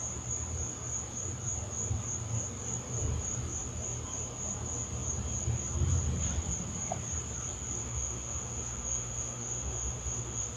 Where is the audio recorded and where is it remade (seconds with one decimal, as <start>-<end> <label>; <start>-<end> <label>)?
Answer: 0.0-7.8 recorded; 7.8-10.6 remade